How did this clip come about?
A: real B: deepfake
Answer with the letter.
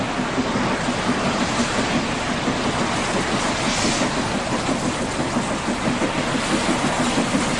A